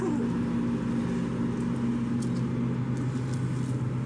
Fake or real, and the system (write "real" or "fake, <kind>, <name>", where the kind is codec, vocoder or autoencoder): real